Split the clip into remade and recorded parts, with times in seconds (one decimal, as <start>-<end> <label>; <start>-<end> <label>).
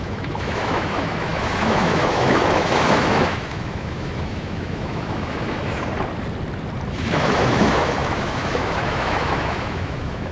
0.0-5.9 remade; 5.9-6.9 recorded; 6.9-10.3 remade